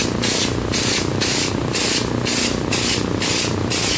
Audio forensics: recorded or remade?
recorded